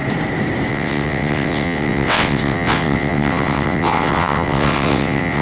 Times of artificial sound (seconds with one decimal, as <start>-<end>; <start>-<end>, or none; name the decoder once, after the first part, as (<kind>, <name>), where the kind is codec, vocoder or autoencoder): 0.7-5.4 (vocoder, WaveNeXt)